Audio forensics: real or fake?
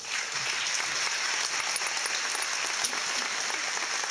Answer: real